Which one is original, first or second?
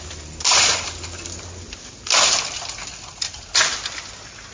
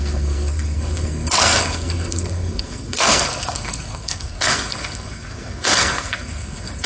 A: first